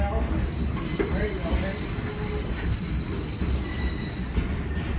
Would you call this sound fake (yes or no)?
no